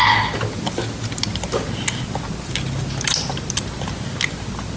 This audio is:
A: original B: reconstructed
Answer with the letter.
A